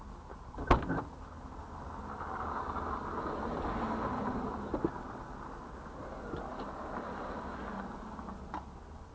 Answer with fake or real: real